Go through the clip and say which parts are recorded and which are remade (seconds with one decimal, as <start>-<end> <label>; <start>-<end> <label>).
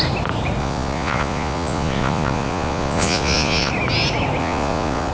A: 0.0-0.6 recorded; 0.6-3.7 remade; 3.7-4.4 recorded; 4.4-5.1 remade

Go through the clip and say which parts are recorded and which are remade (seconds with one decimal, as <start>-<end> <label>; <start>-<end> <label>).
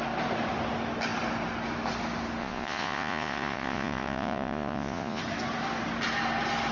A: 0.0-2.4 recorded; 2.4-5.2 remade; 5.2-6.7 recorded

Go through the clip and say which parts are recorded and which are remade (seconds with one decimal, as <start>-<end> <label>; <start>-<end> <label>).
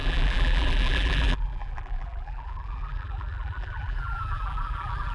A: 0.0-5.1 remade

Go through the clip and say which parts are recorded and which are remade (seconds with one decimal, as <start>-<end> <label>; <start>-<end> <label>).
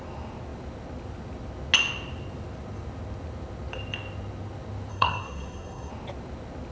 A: 0.0-4.9 recorded; 4.9-5.9 remade; 5.9-6.7 recorded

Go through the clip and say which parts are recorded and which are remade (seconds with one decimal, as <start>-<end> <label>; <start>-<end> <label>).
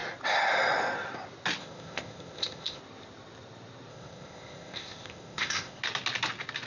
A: 0.0-1.6 recorded; 1.6-2.8 remade; 2.8-3.9 recorded; 3.9-5.8 remade; 5.8-6.7 recorded